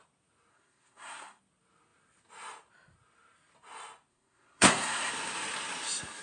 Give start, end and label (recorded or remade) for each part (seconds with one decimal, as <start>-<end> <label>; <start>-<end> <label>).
0.0-0.5 recorded; 0.5-1.4 remade; 1.4-4.1 recorded; 4.1-5.1 remade; 5.1-6.2 recorded